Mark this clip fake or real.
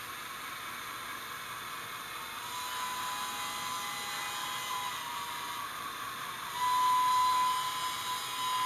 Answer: real